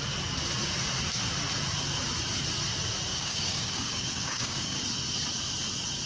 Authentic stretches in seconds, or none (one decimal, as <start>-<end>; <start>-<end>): 0.0-3.1; 4.8-6.1